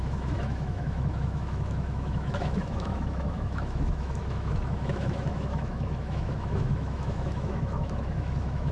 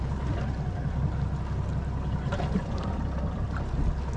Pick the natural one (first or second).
second